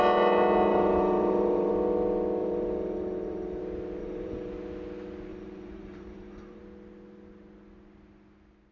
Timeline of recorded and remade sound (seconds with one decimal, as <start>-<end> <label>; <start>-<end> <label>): 0.0-0.7 recorded; 0.7-1.7 remade; 1.7-2.4 recorded; 2.4-3.6 remade; 3.6-4.0 recorded; 4.0-4.5 remade; 4.5-5.3 recorded; 5.3-6.6 remade; 6.6-8.7 recorded